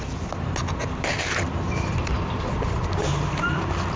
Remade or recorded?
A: recorded